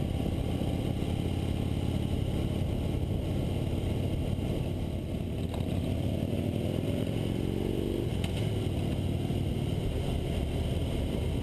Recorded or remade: recorded